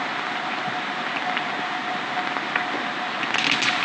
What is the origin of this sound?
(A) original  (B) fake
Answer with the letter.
A